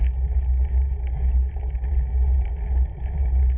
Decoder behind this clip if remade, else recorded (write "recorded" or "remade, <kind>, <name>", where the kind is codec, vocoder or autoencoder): recorded